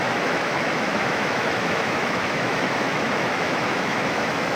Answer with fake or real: fake